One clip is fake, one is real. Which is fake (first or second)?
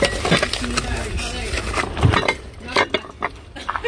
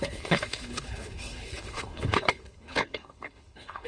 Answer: second